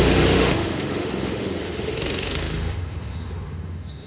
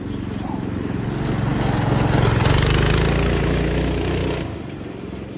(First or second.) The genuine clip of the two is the second